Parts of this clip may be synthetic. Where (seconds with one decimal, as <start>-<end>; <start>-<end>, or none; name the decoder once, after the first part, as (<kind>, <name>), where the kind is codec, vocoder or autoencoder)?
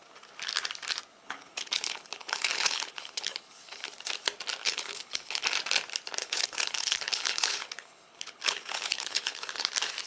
1.2-3.9 (codec, HILCodec); 4.6-5.4; 6.2-9.7